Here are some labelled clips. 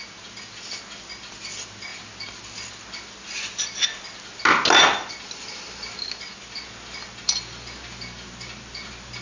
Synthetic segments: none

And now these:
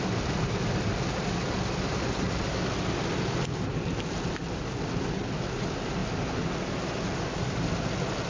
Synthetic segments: none

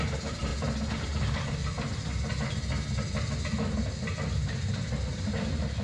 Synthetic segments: 0.0-0.5 (vocoder, BigVGAN v2); 1.0-1.6; 5.1-5.8

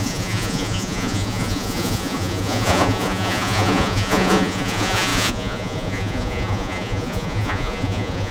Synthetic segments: 0.0-8.3 (vocoder, Vocos)